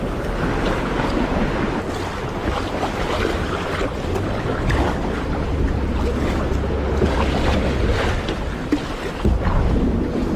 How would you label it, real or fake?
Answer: real